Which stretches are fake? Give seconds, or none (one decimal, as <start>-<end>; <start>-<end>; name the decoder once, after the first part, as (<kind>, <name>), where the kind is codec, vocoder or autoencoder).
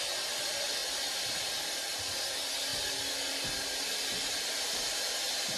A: 0.8-1.5 (vocoder, BigVGAN v2)